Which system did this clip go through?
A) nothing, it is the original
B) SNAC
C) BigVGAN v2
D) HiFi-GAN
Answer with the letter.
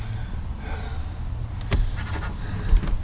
A